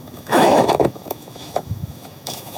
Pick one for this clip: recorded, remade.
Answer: remade